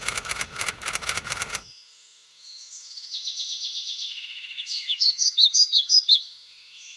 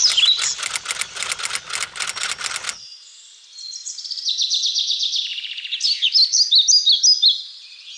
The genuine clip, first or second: second